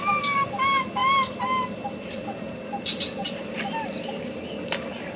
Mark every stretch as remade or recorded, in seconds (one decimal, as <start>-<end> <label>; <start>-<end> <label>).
0.0-5.2 recorded